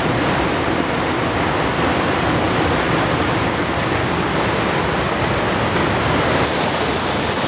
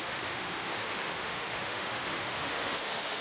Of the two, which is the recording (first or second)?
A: first